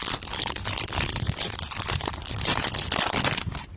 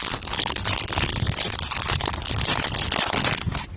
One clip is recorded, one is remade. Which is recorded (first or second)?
second